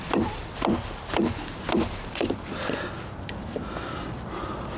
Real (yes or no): yes